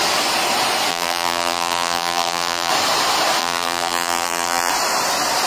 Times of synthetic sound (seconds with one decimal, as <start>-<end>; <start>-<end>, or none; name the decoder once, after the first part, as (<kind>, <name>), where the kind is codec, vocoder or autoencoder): 0.9-2.7 (vocoder, BigVGAN v2); 3.4-4.7